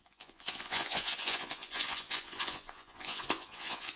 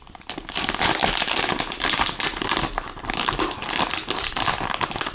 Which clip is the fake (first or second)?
first